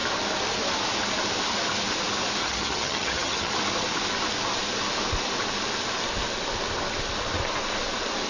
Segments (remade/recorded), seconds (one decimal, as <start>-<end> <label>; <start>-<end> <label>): 0.0-2.4 recorded; 2.4-3.5 remade; 3.5-8.3 recorded